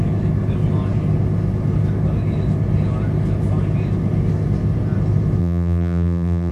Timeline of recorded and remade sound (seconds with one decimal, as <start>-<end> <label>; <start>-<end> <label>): 0.0-5.4 recorded; 5.4-6.5 remade